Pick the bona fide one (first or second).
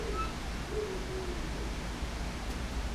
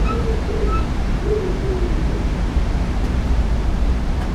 first